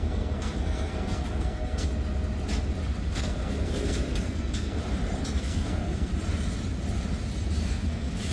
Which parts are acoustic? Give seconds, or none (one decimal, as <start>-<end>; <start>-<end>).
1.9-3.1; 4.8-5.4; 6.1-7.6